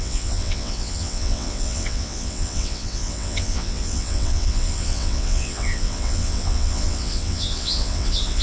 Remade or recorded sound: remade